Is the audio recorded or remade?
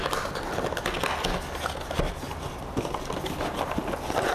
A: recorded